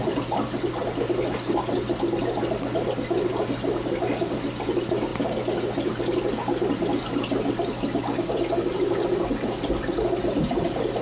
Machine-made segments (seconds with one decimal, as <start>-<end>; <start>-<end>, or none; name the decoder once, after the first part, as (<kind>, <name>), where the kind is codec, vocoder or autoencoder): none